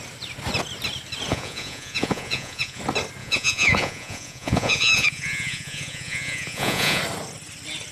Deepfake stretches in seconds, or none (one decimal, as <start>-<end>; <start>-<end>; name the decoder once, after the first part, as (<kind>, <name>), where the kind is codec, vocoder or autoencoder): 1.3-2.8 (vocoder, Vocos); 3.2-7.0